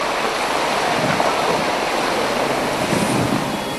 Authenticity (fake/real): real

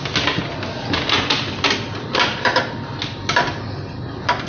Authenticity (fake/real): real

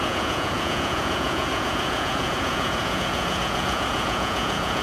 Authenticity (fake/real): fake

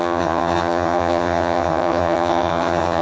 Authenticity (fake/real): fake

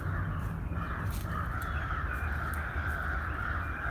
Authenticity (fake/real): real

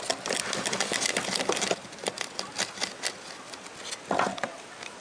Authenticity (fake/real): real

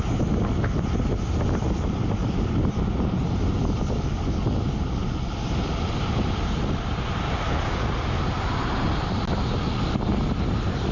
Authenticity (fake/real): real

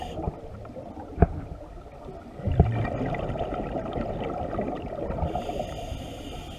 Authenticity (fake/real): real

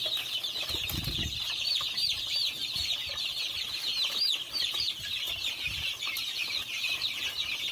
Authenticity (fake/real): fake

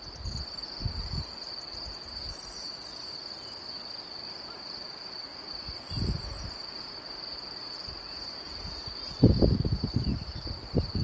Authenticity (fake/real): real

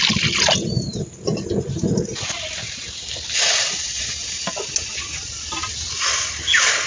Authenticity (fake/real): real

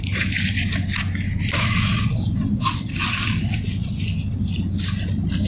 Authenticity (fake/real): real